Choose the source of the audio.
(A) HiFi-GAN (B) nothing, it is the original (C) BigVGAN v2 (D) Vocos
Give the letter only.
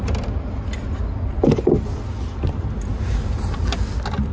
B